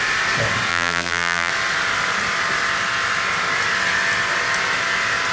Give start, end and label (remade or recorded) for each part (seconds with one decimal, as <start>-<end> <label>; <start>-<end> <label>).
0.0-0.7 recorded; 0.7-1.5 remade; 1.5-5.3 recorded